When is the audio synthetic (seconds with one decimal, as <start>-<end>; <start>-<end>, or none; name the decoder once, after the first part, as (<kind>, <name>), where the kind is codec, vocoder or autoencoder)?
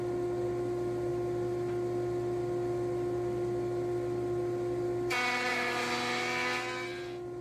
none